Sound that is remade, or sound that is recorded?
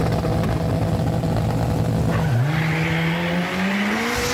recorded